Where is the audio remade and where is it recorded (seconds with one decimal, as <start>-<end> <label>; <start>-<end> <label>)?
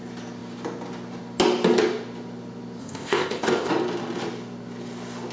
0.0-2.8 recorded; 2.8-3.7 remade; 3.7-5.3 recorded